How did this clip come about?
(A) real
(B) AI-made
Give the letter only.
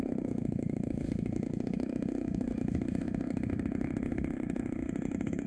B